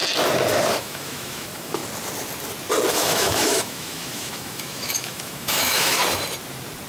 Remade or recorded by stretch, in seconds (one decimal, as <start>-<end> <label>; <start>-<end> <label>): 0.0-0.8 recorded; 0.8-1.8 remade; 1.8-2.9 recorded; 2.9-6.0 remade; 6.0-6.9 recorded